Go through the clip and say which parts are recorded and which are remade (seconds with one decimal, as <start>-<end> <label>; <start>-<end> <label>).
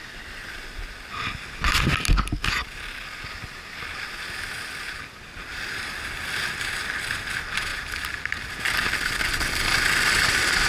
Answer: 0.0-10.7 recorded